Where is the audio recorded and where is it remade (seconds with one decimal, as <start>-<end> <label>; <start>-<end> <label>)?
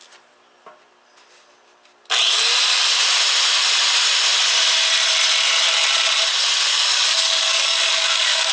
0.0-6.7 recorded; 6.7-8.5 remade